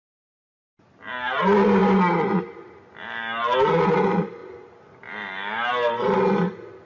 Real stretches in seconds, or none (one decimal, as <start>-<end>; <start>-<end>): 0.0-6.9